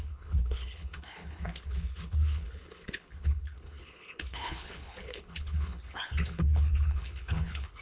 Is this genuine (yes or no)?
no